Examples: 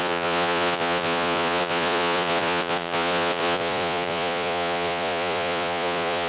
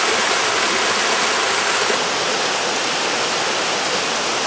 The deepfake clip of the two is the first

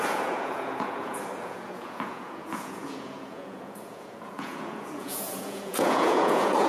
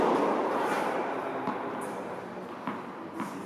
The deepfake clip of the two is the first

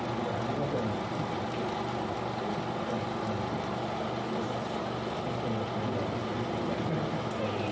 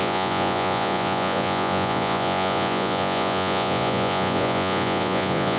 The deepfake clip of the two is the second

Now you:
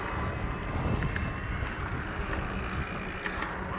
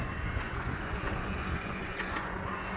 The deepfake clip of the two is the second